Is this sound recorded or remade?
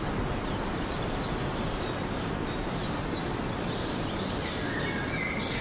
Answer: recorded